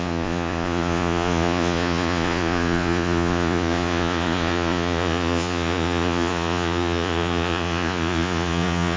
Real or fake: fake